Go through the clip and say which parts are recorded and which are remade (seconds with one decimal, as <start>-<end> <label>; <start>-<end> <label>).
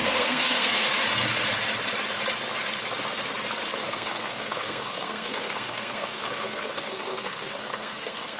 0.0-1.0 remade; 1.0-3.8 recorded; 3.8-8.4 remade